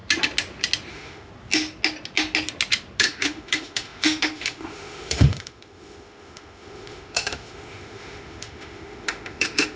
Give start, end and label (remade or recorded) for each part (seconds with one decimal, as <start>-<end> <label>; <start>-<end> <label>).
0.0-0.9 recorded; 0.9-1.3 remade; 1.3-3.0 recorded; 3.0-9.8 remade